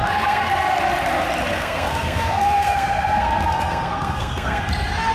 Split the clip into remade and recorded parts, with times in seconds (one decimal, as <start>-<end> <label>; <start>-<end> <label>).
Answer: 0.0-0.5 remade; 0.5-1.5 recorded; 1.5-4.6 remade; 4.6-5.1 recorded